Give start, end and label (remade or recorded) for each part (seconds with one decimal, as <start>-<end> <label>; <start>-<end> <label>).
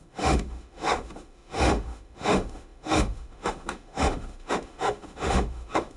0.0-6.0 remade